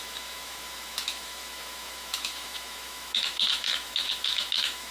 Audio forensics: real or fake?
fake